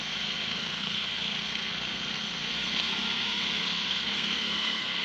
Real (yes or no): no